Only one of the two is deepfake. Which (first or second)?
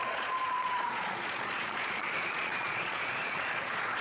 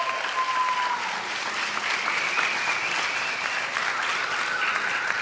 first